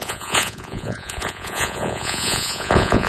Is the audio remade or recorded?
remade